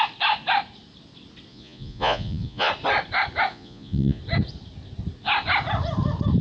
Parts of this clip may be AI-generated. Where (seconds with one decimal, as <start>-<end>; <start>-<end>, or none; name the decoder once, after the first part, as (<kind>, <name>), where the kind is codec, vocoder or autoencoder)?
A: 1.5-2.7 (vocoder, Vocos); 3.5-4.2